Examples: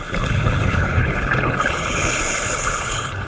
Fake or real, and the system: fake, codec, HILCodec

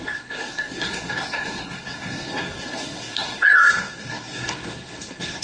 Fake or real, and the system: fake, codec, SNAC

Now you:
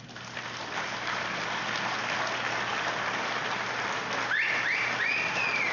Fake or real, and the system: real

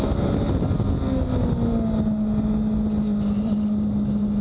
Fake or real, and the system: real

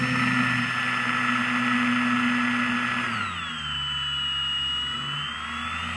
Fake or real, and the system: real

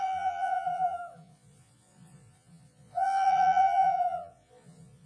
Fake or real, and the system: fake, vocoder, Vocos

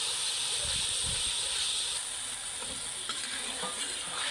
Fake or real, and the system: real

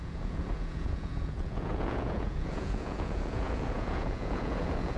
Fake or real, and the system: fake, vocoder, Vocos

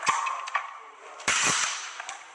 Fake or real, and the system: real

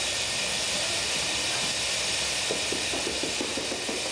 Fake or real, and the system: real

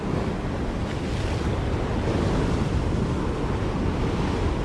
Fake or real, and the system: real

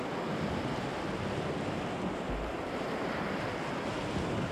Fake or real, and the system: real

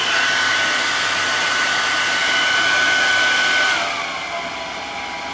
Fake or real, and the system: real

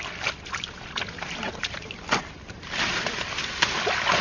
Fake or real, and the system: real